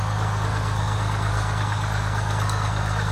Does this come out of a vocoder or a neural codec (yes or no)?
yes